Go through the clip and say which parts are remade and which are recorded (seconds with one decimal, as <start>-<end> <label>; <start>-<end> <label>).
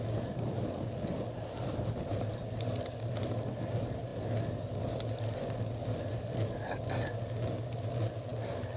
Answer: 0.0-8.8 recorded